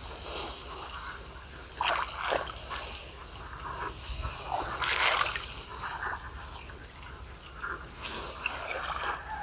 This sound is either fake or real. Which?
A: real